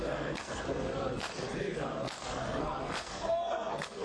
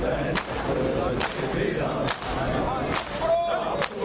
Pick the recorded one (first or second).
second